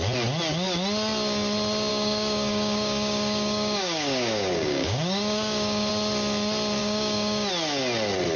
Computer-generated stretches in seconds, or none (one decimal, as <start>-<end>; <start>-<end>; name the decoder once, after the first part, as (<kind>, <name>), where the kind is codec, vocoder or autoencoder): 1.9-5.9 (codec, DAC); 6.8-7.5